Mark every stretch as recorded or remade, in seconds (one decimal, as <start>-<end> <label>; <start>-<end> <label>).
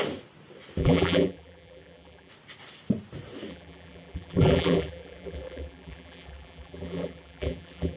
0.0-0.8 recorded; 0.8-2.3 remade; 2.3-3.5 recorded; 3.5-8.0 remade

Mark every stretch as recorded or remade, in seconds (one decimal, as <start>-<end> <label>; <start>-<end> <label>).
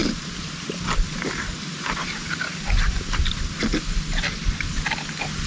0.0-0.5 remade; 0.5-5.5 recorded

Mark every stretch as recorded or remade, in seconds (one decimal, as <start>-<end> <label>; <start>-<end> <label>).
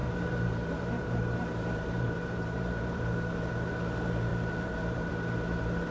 0.0-3.5 remade; 3.5-4.3 recorded; 4.3-5.1 remade; 5.1-5.9 recorded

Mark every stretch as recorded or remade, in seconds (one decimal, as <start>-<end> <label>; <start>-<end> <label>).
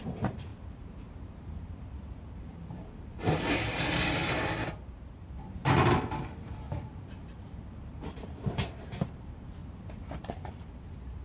0.0-9.6 remade; 9.6-10.2 recorded; 10.2-11.2 remade